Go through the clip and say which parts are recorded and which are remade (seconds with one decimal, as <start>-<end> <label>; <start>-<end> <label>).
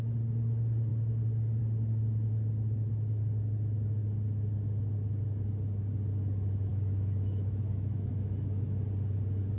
0.0-6.7 recorded; 6.7-8.1 remade; 8.1-9.6 recorded